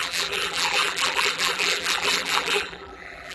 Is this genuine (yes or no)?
no